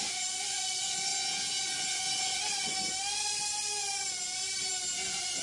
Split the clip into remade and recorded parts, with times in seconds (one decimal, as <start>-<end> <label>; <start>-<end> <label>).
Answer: 0.0-1.1 remade; 1.1-1.6 recorded; 1.6-4.7 remade; 4.7-5.4 recorded